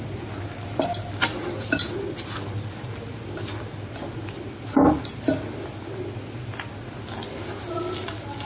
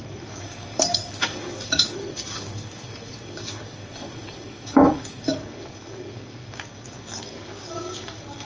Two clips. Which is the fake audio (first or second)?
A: second